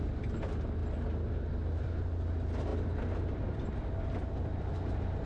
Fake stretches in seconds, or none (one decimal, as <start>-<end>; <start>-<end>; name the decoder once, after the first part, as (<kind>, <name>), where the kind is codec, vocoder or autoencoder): none